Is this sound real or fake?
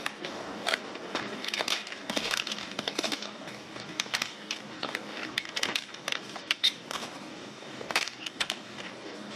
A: fake